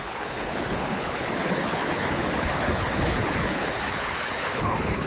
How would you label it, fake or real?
fake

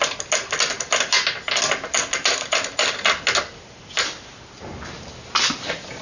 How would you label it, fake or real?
real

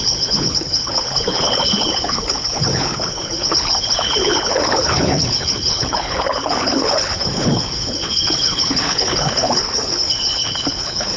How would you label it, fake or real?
fake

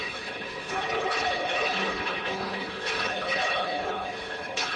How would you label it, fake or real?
fake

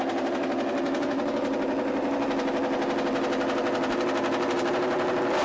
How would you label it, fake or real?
real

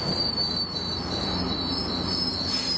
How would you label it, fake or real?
real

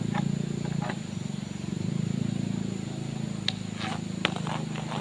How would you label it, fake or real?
real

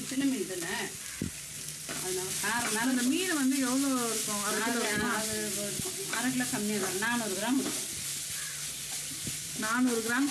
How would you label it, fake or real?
real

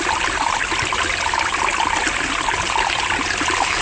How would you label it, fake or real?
real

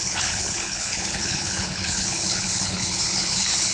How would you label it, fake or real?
fake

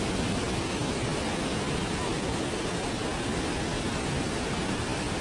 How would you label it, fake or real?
real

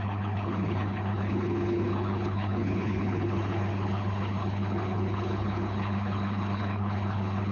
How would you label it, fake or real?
fake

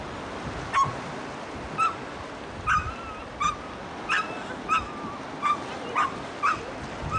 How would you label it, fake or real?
real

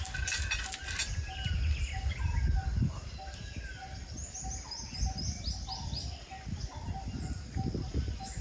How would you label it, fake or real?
real